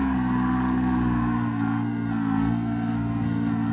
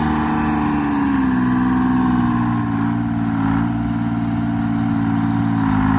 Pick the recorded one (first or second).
second